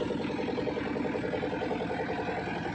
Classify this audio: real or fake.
real